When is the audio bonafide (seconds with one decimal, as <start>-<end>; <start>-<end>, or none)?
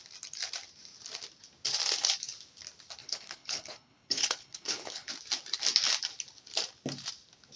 0.0-3.0; 5.1-7.6